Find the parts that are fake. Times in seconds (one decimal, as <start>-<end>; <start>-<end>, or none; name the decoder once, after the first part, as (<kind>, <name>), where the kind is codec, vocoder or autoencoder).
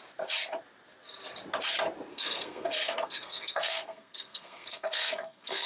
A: 2.1-5.7 (codec, SNAC)